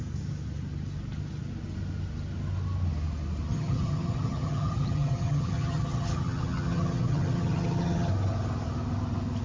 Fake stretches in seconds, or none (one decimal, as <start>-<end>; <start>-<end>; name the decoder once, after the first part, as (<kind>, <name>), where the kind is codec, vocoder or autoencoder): 3.5-8.1 (vocoder, HiFi-GAN)